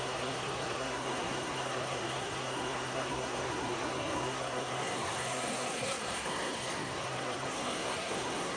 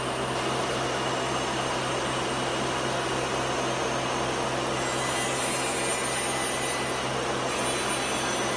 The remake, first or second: first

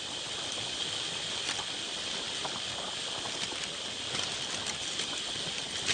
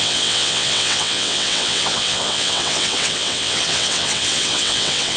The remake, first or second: second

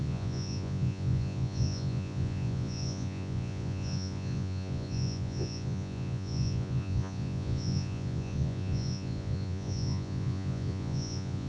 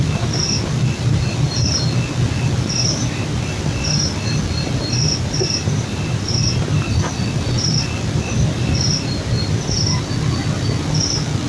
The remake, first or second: first